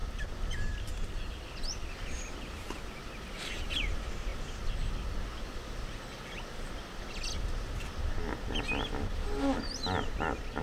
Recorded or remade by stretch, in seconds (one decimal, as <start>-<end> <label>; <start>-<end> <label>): 0.0-10.6 recorded